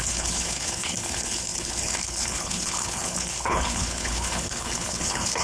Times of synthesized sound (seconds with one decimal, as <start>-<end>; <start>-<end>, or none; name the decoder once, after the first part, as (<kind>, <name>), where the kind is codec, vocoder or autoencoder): 0.0-5.4 (codec, HILCodec)